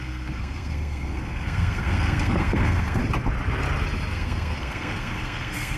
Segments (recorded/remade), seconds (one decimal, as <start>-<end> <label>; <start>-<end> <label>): 0.0-3.0 remade; 3.0-4.1 recorded; 4.1-5.8 remade